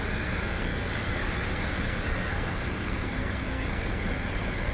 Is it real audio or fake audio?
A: fake